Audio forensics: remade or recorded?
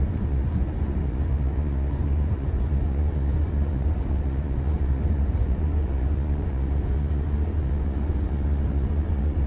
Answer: remade